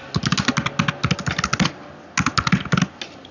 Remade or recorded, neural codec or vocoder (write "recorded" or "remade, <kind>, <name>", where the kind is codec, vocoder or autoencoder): recorded